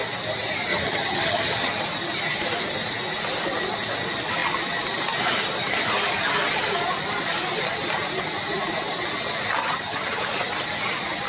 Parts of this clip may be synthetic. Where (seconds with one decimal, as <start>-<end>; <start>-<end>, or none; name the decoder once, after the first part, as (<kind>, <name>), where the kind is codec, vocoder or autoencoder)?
0.7-1.7 (vocoder, HiFi-GAN); 9.6-10.2